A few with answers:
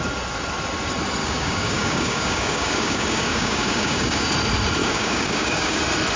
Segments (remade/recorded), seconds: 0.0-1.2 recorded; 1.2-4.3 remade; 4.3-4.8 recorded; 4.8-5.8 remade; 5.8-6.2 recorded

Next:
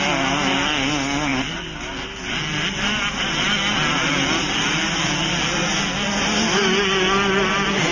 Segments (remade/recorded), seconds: 0.0-7.9 recorded

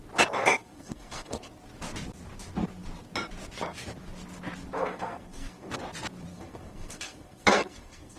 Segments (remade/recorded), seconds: 0.0-0.4 recorded; 0.4-1.5 remade; 1.5-4.8 recorded; 4.8-5.7 remade; 5.7-6.3 recorded; 6.3-8.2 remade

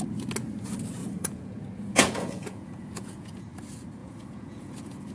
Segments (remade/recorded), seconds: 0.0-1.0 recorded; 1.0-3.4 remade; 3.4-4.0 recorded; 4.0-5.1 remade